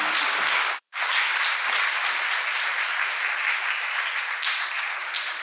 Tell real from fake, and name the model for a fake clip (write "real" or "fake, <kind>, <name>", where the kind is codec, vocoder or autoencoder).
real